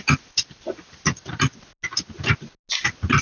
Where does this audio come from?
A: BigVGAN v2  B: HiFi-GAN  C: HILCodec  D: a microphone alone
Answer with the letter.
D